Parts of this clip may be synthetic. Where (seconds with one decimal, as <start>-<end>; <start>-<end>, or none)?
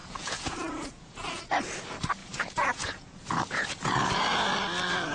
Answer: 0.0-1.4; 2.2-4.2